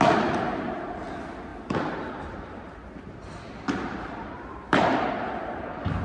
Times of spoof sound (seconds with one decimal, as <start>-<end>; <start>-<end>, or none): 1.5-5.1